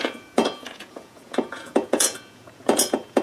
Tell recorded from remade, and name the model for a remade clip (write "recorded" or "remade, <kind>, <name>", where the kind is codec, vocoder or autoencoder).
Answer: remade, vocoder, Vocos